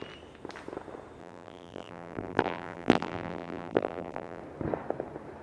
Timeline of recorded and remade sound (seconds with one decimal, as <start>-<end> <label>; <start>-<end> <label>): 0.0-1.2 recorded; 1.2-4.4 remade; 4.4-5.4 recorded